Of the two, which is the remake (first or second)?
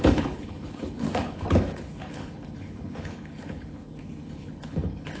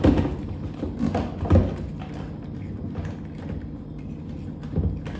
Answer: first